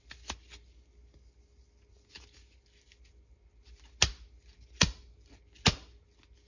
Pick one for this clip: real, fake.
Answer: real